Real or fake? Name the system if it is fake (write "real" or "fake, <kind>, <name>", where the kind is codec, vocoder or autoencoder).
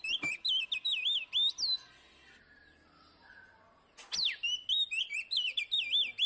real